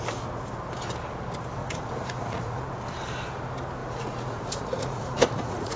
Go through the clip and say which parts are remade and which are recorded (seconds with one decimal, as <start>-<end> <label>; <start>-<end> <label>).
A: 0.0-1.6 recorded; 1.6-2.6 remade; 2.6-3.8 recorded; 3.8-5.8 remade